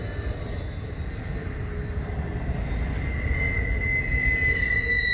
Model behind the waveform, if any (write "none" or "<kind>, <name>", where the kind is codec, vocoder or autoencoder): none